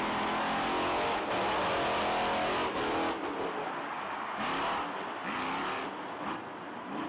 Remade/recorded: recorded